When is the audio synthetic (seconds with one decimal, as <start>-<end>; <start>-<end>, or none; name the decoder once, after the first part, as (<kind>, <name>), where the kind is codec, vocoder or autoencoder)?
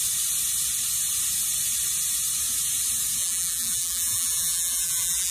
3.2-5.3 (vocoder, BigVGAN v2)